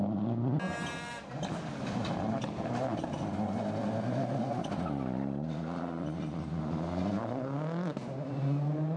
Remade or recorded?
recorded